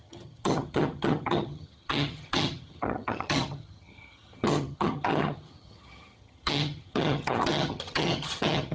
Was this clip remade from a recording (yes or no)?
yes